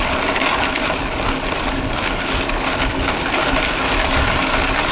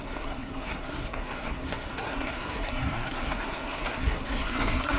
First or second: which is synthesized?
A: second